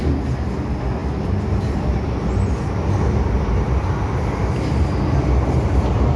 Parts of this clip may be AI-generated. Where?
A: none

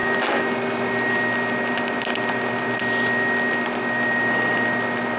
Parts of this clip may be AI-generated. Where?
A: none

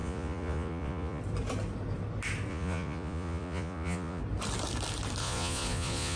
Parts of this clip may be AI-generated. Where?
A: 0.0-1.2 (vocoder, Vocos); 2.5-4.2; 5.2-6.2